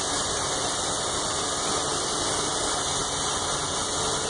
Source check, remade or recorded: recorded